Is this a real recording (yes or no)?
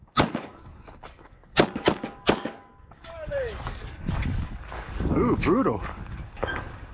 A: no